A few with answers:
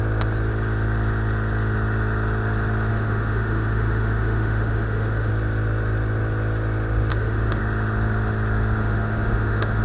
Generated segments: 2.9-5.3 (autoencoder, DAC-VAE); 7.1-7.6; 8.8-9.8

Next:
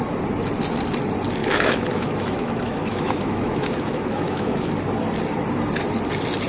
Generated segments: 1.4-4.7 (autoencoder, DAC-VAE)

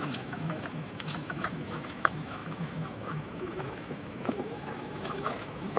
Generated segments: 0.0-5.8 (autoencoder, DAC-VAE)

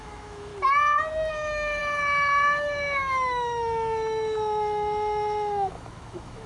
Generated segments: 0.0-0.5 (autoencoder, DAC-VAE); 1.3-6.5

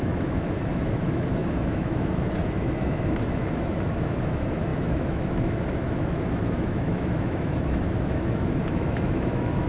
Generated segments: 0.0-9.7 (autoencoder, DAC-VAE)